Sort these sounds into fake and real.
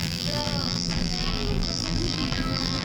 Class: fake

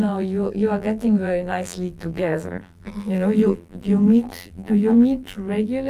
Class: fake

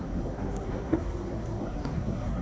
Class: fake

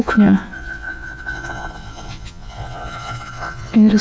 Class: fake